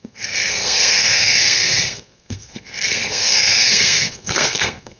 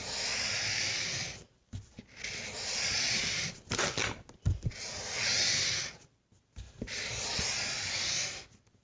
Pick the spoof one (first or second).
first